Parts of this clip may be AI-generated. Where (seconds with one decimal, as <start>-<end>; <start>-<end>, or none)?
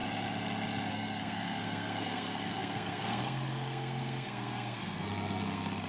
0.9-5.9